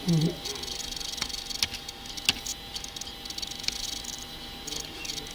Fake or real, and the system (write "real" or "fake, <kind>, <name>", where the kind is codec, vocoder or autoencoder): real